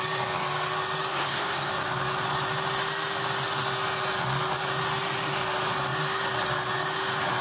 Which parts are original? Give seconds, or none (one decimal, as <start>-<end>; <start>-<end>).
0.0-1.1; 1.7-7.4